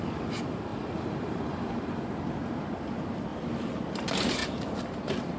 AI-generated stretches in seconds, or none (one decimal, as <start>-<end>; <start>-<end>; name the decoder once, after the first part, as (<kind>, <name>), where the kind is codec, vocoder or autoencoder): 0.7-2.1 (vocoder, BigVGAN v2); 3.3-3.9; 4.4-5.4